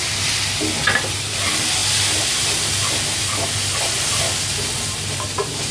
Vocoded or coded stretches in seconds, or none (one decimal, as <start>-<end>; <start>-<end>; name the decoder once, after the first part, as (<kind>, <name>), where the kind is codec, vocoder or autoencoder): 0.0-1.8 (vocoder, BigVGAN v2); 4.9-5.7